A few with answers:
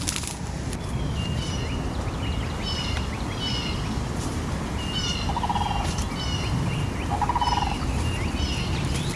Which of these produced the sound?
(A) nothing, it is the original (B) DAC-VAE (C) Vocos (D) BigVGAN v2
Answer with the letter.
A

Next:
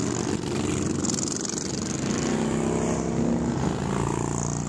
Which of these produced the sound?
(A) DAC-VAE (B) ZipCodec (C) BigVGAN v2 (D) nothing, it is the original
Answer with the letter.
D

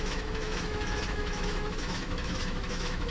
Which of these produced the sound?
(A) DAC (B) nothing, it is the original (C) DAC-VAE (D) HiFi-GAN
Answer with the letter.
C